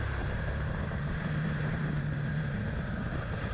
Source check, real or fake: fake